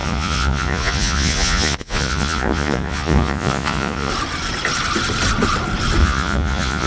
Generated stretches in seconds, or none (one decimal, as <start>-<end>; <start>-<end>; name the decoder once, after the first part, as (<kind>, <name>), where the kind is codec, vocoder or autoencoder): 0.0-4.1 (vocoder, Vocos); 6.0-6.9